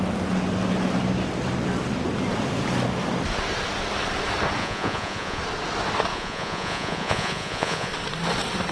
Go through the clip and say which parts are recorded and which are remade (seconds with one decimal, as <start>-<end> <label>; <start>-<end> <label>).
0.0-4.6 recorded; 4.6-5.4 remade; 5.4-6.1 recorded; 6.1-7.9 remade; 7.9-8.7 recorded